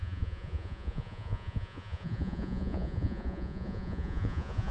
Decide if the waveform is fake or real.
fake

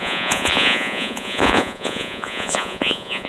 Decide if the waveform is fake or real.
fake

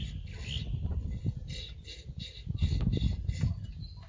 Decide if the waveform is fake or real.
real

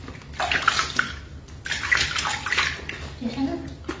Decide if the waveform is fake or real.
real